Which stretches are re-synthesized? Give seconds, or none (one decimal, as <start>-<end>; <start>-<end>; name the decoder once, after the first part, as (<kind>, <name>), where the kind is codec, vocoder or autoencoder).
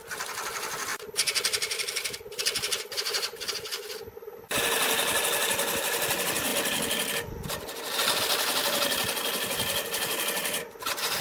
none